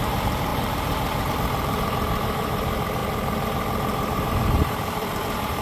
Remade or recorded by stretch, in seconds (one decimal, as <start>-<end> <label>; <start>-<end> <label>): 0.0-5.6 remade